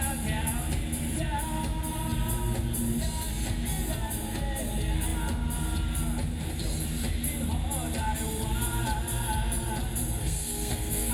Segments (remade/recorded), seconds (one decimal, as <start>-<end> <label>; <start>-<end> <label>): 0.0-10.2 recorded; 10.2-11.1 remade